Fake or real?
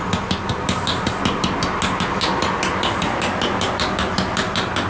real